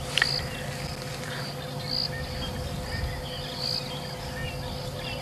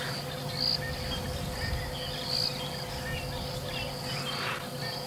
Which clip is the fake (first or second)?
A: second